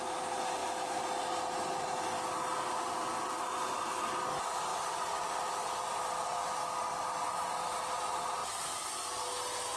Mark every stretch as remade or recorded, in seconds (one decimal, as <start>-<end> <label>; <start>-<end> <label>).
0.0-9.8 recorded